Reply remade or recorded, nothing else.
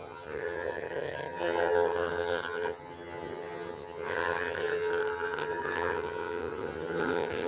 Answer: remade